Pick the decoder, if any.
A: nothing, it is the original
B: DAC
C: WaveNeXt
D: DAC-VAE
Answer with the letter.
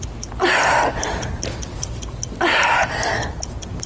A